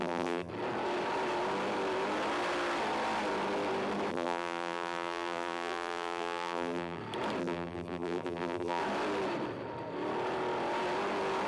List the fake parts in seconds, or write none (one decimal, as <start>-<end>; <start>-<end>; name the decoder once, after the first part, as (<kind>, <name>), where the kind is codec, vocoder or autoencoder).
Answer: 0.0-0.5 (vocoder, BigVGAN v2); 4.1-7.0; 7.4-8.8